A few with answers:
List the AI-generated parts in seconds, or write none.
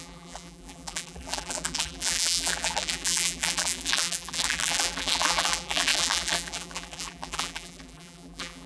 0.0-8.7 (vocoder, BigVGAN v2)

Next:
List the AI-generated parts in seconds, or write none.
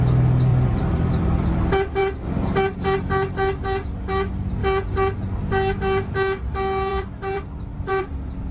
0.5-1.6 (vocoder, BigVGAN v2); 6.9-8.5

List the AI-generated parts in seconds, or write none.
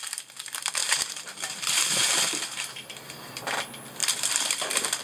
0.0-0.8 (vocoder, BigVGAN v2); 1.6-5.0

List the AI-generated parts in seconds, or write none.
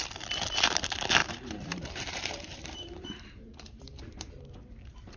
1.2-4.3 (vocoder, BigVGAN v2)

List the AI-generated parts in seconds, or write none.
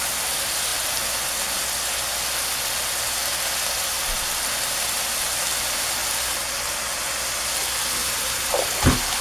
8.0-8.7 (vocoder, BigVGAN v2)